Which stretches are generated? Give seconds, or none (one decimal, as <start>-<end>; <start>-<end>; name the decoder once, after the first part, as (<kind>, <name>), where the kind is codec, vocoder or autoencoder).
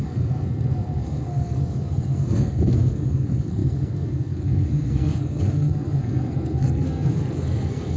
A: 0.0-8.0 (codec, SNAC)